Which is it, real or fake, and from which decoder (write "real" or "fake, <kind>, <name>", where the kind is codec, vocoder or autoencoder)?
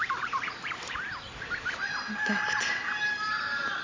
real